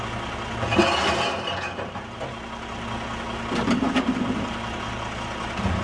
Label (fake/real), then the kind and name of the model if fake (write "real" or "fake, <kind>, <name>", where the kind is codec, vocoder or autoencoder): real